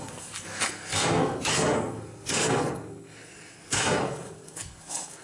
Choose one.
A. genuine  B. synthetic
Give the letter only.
B